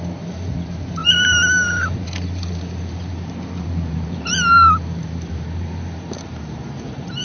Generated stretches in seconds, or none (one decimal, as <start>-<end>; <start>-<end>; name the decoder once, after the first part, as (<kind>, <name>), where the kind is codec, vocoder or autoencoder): 0.0-7.2 (vocoder, BigVGAN v2)